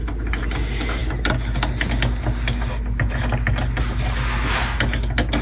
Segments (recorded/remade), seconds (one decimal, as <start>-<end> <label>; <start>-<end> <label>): 0.0-5.4 recorded

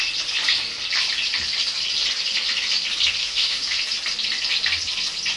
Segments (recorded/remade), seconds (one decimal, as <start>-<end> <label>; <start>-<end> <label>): 0.0-3.2 recorded; 3.2-3.8 remade; 3.8-5.4 recorded

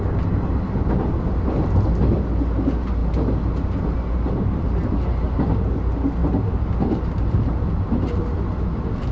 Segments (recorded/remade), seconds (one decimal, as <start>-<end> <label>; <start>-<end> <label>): 0.0-6.2 recorded; 6.2-7.8 remade; 7.8-9.1 recorded